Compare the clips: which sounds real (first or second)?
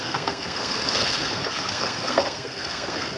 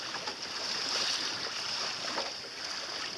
second